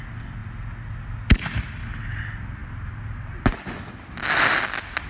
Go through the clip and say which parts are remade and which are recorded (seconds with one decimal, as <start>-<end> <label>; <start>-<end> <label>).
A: 0.0-5.1 recorded